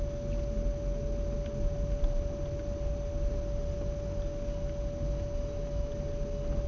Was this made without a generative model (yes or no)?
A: yes